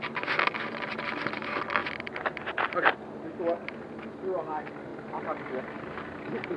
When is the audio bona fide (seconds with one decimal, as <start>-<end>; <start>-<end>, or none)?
0.0-6.6